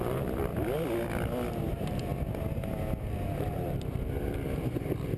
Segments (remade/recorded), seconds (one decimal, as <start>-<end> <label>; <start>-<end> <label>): 0.0-0.5 remade; 0.5-1.7 recorded; 1.7-2.1 remade; 2.1-3.2 recorded; 3.2-5.2 remade